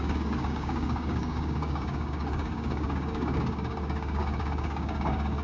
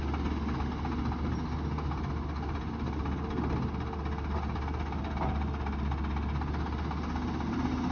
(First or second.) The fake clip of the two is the first